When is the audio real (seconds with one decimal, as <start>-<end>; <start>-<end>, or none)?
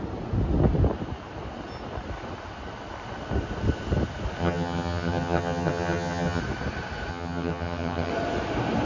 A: 0.0-4.4; 6.4-7.1; 8.1-8.8